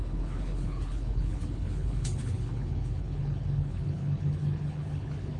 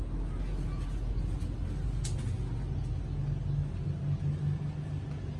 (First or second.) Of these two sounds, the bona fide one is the second